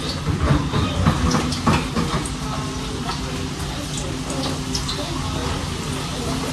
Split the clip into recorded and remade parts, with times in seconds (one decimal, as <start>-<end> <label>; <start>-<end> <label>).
0.0-5.4 recorded; 5.4-6.0 remade; 6.0-6.5 recorded